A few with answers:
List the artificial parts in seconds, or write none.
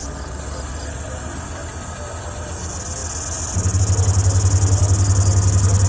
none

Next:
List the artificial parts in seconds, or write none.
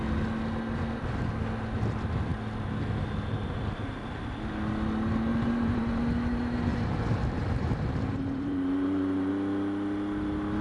5.3-6.0 (vocoder, BigVGAN v2); 6.7-9.3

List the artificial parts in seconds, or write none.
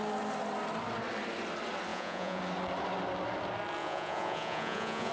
1.9-2.4 (vocoder, Vocos); 3.8-5.1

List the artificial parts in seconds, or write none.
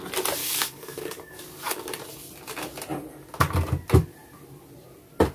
0.4-2.0 (codec, DAC)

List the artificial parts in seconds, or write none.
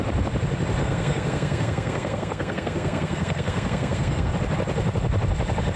0.8-4.3 (codec, SNAC)